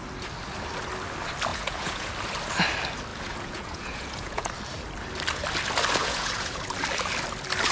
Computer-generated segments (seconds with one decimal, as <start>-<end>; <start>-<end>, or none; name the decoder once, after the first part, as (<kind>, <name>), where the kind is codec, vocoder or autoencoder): 1.5-2.1 (vocoder, Vocos); 3.1-4.5; 6.0-6.6